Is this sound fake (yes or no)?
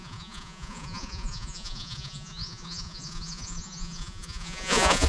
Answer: yes